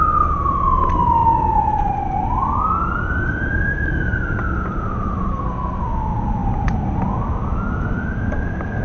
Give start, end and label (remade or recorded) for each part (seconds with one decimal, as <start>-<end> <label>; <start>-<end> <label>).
0.0-5.3 recorded; 5.3-5.8 remade; 5.8-8.8 recorded